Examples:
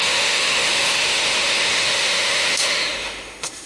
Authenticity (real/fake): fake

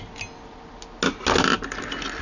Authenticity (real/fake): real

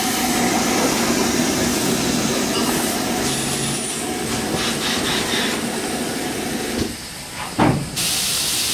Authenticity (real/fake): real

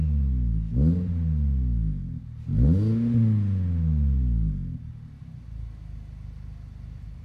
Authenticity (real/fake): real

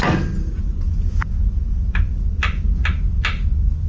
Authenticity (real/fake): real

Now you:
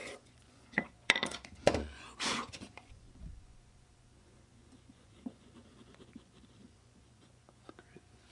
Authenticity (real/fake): fake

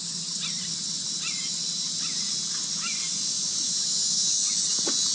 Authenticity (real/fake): real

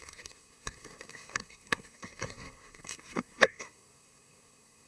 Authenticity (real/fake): fake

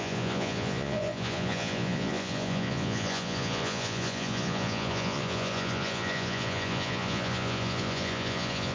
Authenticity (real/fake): fake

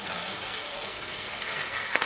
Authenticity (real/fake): fake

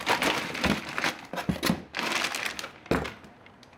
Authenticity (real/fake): real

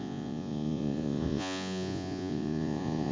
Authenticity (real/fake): fake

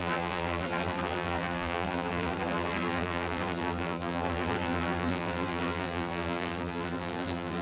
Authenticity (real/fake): fake